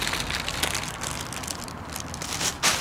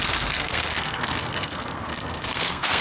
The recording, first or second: first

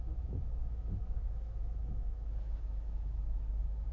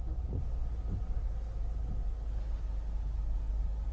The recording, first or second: second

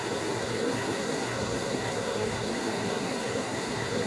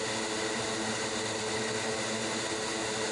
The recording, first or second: second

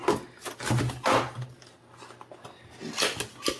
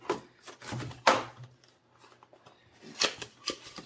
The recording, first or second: first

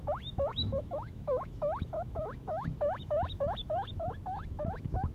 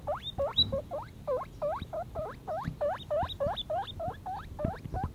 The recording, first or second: second